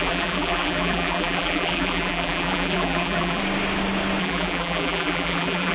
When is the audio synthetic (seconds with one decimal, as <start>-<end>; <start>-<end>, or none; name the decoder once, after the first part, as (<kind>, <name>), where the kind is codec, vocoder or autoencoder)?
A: 0.0-3.4 (vocoder, BigVGAN v2); 4.2-5.7